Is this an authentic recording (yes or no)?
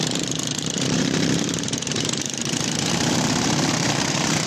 no